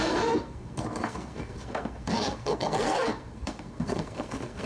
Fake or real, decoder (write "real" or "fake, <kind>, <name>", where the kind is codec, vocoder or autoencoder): fake, codec, SNAC